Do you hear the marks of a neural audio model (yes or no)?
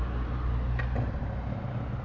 no